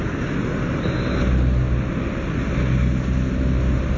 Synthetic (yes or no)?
no